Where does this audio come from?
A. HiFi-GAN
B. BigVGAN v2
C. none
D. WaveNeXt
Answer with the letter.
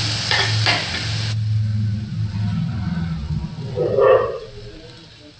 C